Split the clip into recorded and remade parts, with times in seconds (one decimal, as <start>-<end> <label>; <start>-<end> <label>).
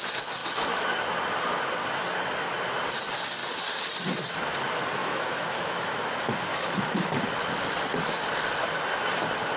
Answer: 0.0-5.0 recorded; 5.0-6.1 remade; 6.1-6.5 recorded; 6.5-7.1 remade; 7.1-9.6 recorded